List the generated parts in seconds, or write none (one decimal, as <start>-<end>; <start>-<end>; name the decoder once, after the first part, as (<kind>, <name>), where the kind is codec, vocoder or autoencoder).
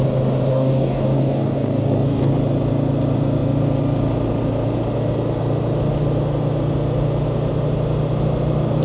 0.5-2.3 (codec, DAC)